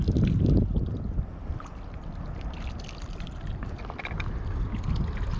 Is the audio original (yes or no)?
yes